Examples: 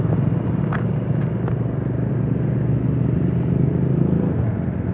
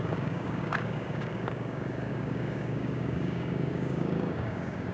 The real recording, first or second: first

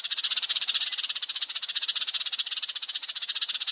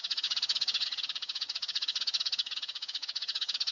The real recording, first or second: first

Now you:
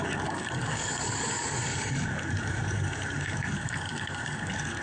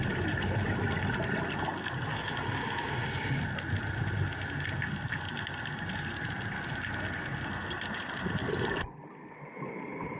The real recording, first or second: second